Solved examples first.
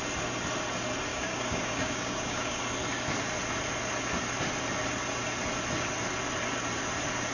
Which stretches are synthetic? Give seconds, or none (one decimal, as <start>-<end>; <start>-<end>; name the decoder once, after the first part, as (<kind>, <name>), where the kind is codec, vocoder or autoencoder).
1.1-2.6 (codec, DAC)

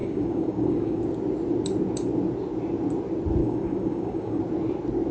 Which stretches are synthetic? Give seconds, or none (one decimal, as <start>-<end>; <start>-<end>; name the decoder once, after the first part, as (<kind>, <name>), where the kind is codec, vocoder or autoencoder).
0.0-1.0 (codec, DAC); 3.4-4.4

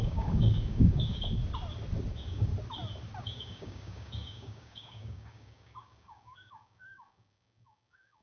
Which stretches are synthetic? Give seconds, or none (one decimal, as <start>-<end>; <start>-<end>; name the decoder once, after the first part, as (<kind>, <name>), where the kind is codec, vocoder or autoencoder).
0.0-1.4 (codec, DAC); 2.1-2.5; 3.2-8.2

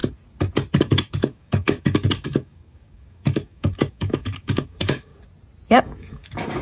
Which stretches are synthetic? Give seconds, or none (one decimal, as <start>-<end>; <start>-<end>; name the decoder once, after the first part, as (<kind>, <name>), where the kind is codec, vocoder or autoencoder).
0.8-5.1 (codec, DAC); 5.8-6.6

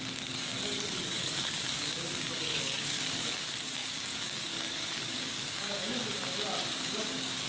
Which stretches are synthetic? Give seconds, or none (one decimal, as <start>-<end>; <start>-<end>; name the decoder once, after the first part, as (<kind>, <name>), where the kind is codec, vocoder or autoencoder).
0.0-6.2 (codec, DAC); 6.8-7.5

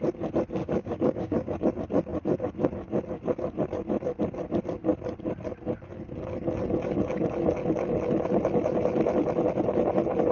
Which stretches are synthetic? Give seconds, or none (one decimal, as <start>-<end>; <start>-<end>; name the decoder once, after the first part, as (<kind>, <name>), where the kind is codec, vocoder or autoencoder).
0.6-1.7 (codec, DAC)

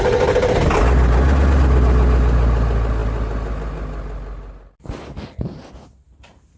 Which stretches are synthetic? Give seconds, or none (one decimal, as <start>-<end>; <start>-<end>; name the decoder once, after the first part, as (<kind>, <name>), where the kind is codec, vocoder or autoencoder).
none

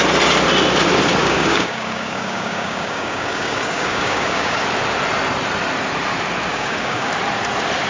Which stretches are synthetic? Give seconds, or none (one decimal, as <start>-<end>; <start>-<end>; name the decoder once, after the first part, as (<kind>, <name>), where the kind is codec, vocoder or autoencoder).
1.2-4.6 (codec, DAC); 6.5-7.1